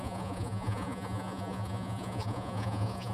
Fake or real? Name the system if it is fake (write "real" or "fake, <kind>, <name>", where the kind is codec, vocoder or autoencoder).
fake, vocoder, Vocos